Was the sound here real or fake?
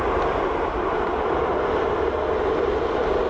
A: real